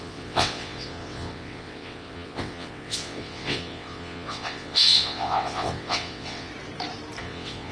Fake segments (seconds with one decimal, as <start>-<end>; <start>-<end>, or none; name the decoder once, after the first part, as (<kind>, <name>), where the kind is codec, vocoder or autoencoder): 0.0-6.5 (vocoder, WaveNeXt); 7.2-7.7